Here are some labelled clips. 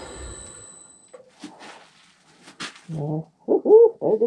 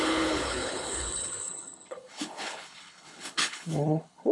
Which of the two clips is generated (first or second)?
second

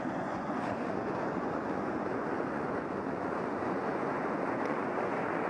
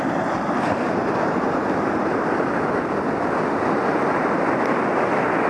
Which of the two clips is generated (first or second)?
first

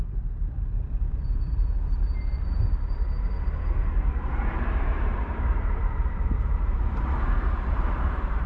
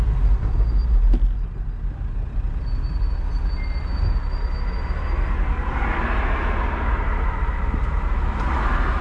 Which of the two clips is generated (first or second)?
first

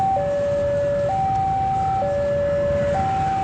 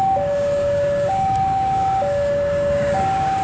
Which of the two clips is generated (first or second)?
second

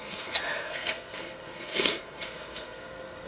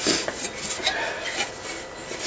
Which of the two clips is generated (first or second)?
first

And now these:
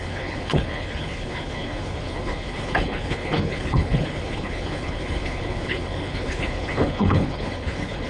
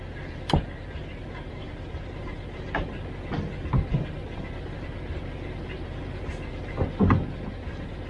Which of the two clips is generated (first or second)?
first